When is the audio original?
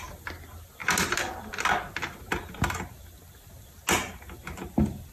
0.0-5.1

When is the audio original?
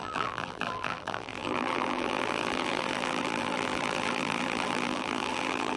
none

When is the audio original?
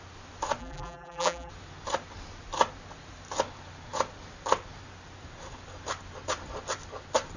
0.0-0.6; 1.5-7.4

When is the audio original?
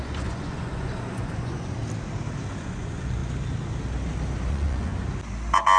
1.8-2.6; 3.2-4.5; 4.9-5.8